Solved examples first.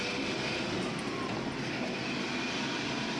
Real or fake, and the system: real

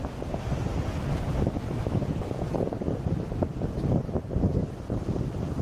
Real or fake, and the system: real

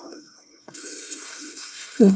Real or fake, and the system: fake, codec, SNAC